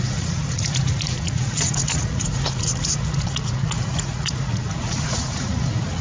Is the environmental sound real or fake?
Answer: fake